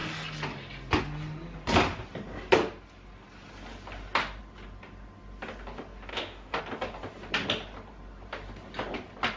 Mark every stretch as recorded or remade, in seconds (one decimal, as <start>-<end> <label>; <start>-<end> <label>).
0.0-6.1 recorded; 6.1-6.6 remade; 6.6-9.4 recorded